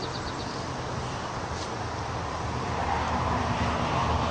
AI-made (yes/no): no